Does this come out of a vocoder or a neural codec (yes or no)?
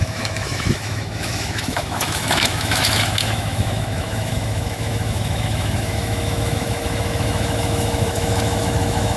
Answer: yes